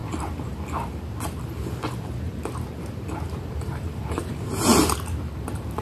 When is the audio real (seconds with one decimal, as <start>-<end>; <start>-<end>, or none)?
0.0-3.5; 4.7-5.8